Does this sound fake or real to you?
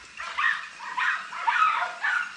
real